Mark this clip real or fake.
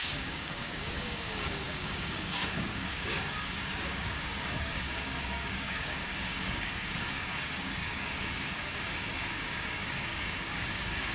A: fake